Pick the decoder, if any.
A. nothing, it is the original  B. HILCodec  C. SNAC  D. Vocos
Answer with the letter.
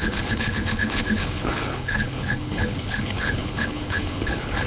B